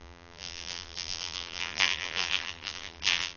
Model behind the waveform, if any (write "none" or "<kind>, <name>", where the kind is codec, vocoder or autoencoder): vocoder, BigVGAN v2